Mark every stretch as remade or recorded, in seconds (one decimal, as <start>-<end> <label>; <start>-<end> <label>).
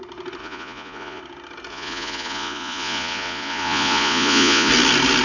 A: 0.0-0.4 recorded; 0.4-1.2 remade; 1.2-1.7 recorded; 1.7-4.7 remade; 4.7-5.2 recorded